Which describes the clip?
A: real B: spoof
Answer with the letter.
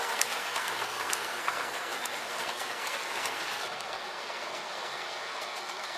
B